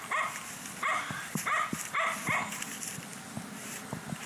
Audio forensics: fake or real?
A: real